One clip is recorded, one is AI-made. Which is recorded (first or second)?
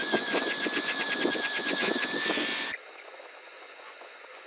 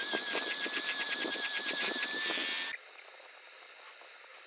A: second